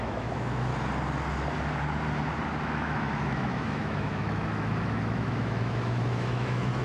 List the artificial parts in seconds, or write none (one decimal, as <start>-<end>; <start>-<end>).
0.0-0.7; 2.6-6.8